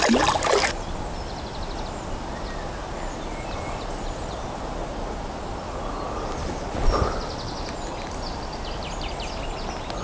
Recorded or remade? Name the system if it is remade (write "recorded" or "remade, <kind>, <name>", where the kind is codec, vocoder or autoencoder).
recorded